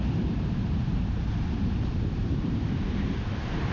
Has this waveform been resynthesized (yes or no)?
yes